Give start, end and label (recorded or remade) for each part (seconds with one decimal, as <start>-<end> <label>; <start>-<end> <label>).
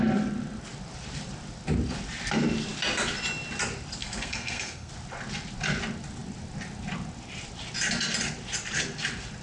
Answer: 0.0-4.0 recorded; 4.0-4.9 remade; 4.9-9.4 recorded